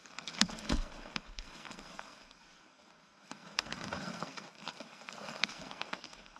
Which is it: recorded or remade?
remade